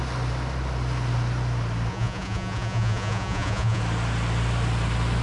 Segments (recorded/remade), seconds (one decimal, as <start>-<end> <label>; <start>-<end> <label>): 0.0-1.9 recorded; 1.9-3.8 remade; 3.8-5.2 recorded